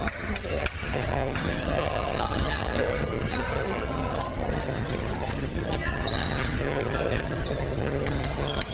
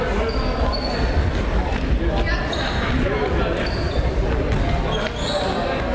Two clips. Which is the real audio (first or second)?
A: second